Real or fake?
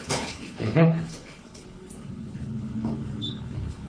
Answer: fake